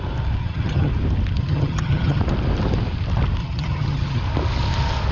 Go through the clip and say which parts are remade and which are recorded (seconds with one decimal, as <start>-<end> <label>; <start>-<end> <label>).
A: 0.0-0.4 recorded; 0.4-0.9 remade; 0.9-1.4 recorded; 1.4-2.2 remade; 2.2-3.4 recorded; 3.4-4.2 remade; 4.2-5.1 recorded